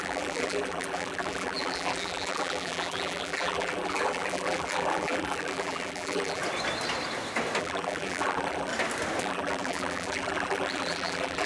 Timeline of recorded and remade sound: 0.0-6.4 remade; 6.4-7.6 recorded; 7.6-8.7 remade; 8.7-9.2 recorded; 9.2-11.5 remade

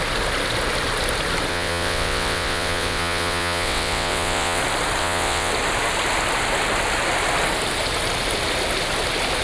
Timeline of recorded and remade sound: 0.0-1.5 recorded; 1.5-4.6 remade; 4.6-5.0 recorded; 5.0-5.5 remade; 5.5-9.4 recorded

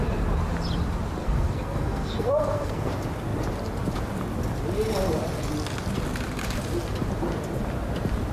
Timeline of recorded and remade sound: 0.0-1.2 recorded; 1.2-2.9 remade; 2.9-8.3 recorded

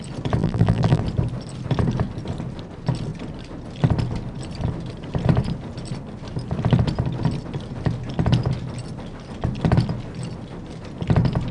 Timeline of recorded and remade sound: 0.0-0.4 recorded; 0.4-1.0 remade; 1.0-11.5 recorded